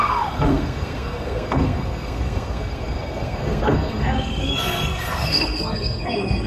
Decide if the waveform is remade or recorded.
remade